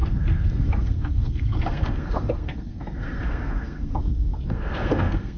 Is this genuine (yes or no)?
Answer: no